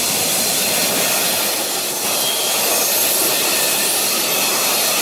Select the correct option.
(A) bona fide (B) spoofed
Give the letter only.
A